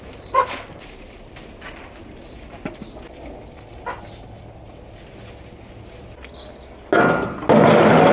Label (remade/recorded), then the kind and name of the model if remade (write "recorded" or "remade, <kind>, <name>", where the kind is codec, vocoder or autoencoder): recorded